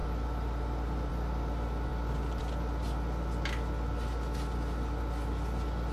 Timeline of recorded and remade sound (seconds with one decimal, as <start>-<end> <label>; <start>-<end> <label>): 0.0-1.9 recorded; 1.9-2.4 remade; 2.4-5.9 recorded